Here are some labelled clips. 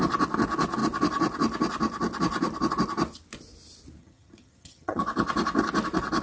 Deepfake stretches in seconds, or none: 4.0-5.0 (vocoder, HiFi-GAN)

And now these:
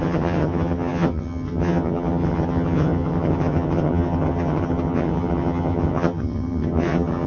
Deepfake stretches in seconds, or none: 0.0-7.3 (vocoder, HiFi-GAN)

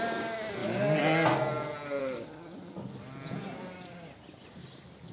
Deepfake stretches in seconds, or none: none

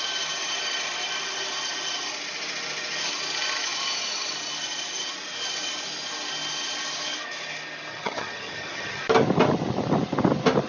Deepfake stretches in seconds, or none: 7.9-9.0 (vocoder, HiFi-GAN)

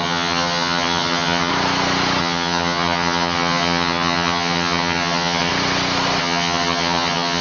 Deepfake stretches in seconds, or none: 0.0-1.5 (vocoder, HiFi-GAN); 2.2-5.5; 6.2-7.4

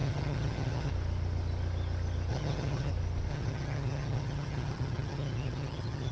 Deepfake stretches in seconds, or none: 0.0-0.9 (vocoder, HiFi-GAN); 2.3-2.9; 3.3-6.1

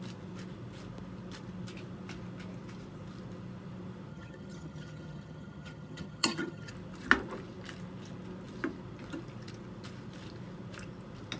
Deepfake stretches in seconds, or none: 4.1-6.7 (vocoder, HiFi-GAN)

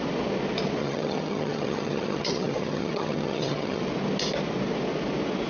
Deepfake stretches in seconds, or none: 0.8-3.8 (vocoder, HiFi-GAN)